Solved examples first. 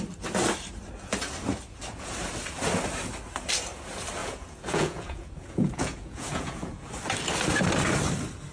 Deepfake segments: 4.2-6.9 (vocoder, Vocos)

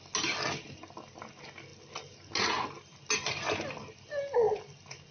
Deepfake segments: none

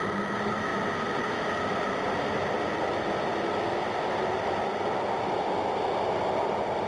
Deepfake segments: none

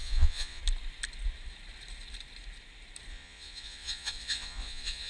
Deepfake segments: 0.0-0.6 (vocoder, Vocos); 3.1-5.1

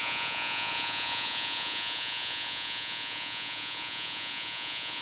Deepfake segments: 0.0-5.0 (vocoder, Vocos)